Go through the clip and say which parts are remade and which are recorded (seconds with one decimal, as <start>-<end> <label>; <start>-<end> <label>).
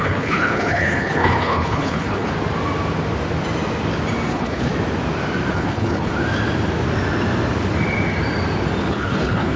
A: 0.0-2.3 remade; 2.3-4.3 recorded; 4.3-4.7 remade; 4.7-5.5 recorded; 5.5-6.1 remade; 6.1-8.8 recorded; 8.8-9.6 remade